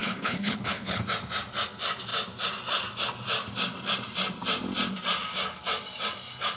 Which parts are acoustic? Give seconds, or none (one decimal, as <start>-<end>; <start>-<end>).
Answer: 1.0-6.6